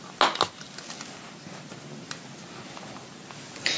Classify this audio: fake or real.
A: real